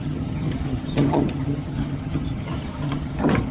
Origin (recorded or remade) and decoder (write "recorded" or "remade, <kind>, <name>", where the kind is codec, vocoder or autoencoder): remade, vocoder, HiFi-GAN